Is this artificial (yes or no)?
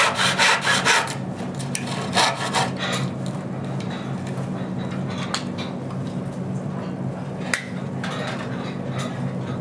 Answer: no